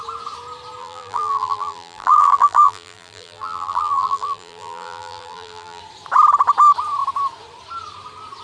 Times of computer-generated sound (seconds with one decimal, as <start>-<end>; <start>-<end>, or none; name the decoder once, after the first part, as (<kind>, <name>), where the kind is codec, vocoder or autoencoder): 0.8-5.8 (vocoder, BigVGAN v2)